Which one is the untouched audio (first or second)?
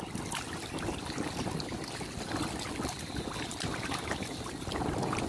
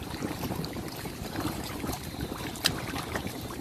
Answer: first